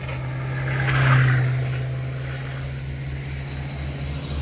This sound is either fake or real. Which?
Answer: real